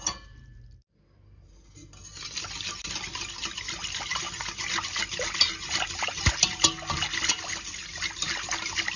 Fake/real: real